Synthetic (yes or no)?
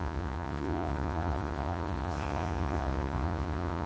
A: yes